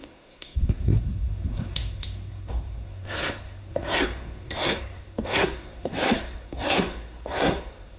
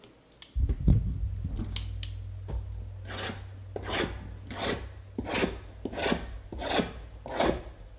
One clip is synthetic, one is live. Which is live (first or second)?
second